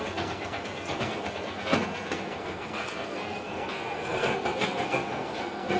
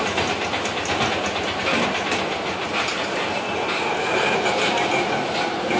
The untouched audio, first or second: second